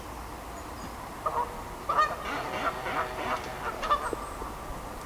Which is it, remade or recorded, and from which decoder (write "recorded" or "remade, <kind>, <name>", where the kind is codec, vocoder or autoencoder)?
recorded